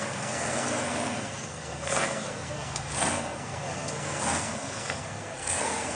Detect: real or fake fake